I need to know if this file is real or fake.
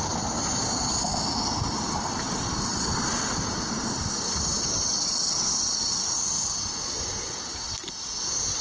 real